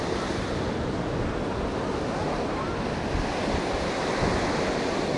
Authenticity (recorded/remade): recorded